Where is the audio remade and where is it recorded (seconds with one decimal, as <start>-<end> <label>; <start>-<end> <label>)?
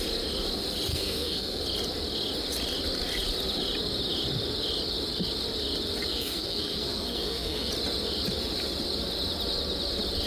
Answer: 0.0-0.9 recorded; 0.9-1.6 remade; 1.6-6.1 recorded; 6.1-7.7 remade; 7.7-10.3 recorded